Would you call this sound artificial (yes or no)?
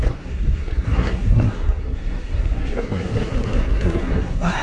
yes